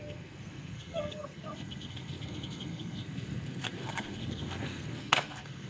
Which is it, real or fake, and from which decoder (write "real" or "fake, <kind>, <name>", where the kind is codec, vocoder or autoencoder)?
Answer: fake, codec, SNAC